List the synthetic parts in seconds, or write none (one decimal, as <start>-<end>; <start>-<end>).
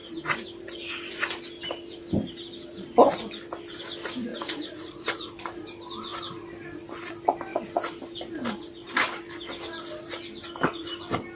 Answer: 4.3-5.3